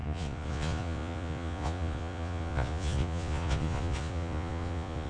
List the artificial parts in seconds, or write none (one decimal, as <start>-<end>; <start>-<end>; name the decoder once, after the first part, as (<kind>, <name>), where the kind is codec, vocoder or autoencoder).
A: 0.0-5.1 (vocoder, Vocos)